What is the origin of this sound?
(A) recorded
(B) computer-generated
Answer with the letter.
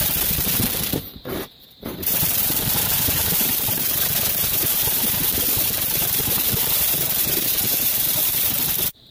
B